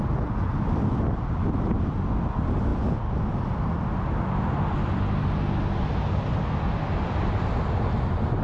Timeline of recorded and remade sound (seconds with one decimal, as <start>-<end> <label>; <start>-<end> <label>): 0.0-8.4 recorded